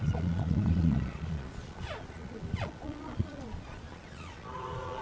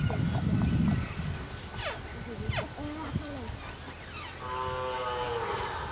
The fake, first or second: first